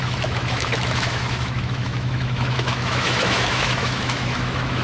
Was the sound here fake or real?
fake